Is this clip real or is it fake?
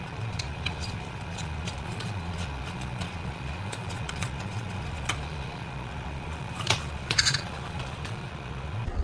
fake